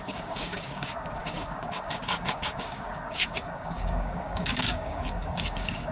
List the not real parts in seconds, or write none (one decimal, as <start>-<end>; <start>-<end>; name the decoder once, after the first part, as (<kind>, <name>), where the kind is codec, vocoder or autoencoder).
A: 0.0-5.9 (codec, DAC)